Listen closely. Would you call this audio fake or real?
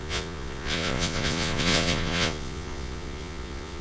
fake